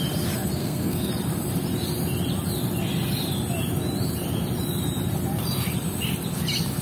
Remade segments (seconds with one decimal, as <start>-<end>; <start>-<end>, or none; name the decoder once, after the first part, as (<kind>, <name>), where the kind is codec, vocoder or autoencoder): 0.6-1.1 (codec, SNAC)